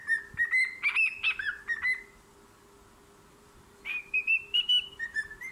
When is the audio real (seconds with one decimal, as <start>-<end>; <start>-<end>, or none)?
0.0-3.3